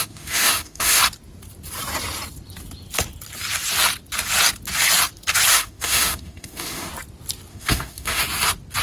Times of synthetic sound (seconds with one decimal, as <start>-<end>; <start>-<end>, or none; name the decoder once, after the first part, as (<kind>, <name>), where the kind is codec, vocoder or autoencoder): 0.0-1.0 (autoencoder, DAC-VAE); 5.5-6.9; 7.5-8.2